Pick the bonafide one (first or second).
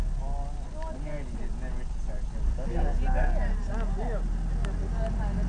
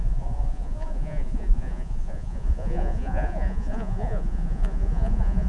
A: first